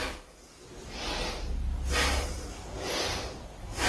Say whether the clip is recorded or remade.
recorded